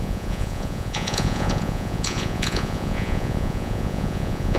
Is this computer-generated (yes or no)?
yes